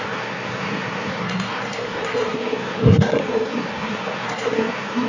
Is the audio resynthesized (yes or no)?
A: yes